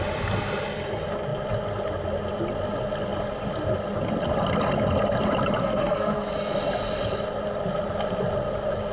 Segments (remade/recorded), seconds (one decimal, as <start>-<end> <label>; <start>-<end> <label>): 0.0-5.6 recorded; 5.6-6.3 remade; 6.3-8.9 recorded